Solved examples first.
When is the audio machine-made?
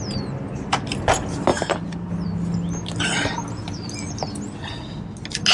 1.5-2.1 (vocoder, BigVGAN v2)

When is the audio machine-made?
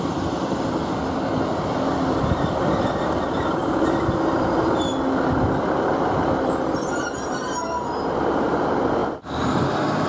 0.0-9.0 (vocoder, BigVGAN v2)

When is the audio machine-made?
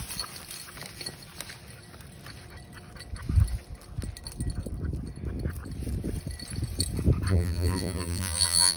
7.3-8.8 (vocoder, BigVGAN v2)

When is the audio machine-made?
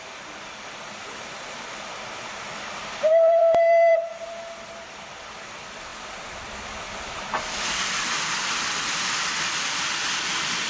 0.0-5.9 (vocoder, BigVGAN v2); 6.5-10.7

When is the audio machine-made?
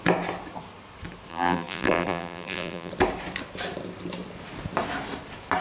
1.3-2.9 (vocoder, BigVGAN v2)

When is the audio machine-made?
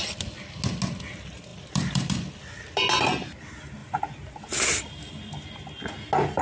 1.5-2.4 (vocoder, BigVGAN v2); 3.8-4.9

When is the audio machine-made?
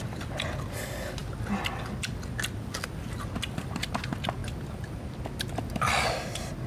none